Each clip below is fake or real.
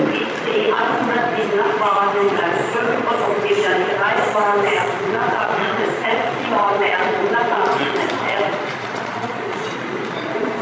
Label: fake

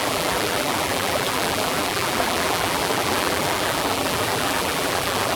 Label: fake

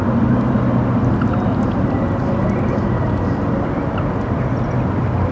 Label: real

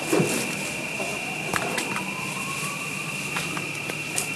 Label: fake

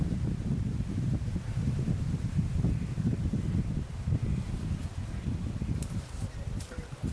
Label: real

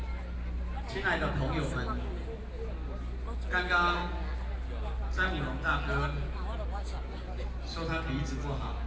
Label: real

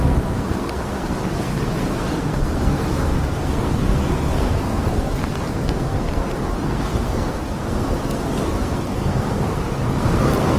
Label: fake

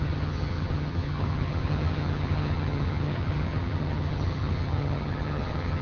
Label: fake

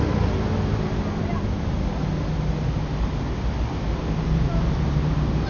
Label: real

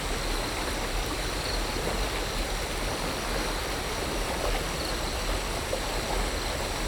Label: real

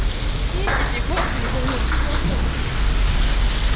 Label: real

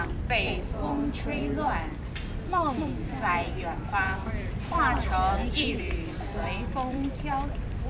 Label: fake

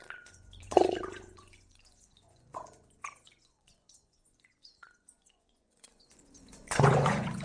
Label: fake